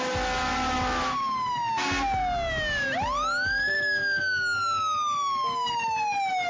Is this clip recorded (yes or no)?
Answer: yes